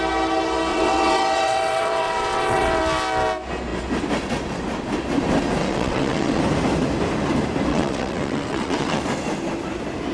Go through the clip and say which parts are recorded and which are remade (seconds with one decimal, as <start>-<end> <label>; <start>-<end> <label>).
0.0-0.7 recorded; 0.7-2.8 remade; 2.8-5.6 recorded; 5.6-6.4 remade; 6.4-7.7 recorded; 7.7-9.0 remade; 9.0-10.1 recorded